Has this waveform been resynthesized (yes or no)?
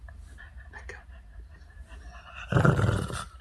no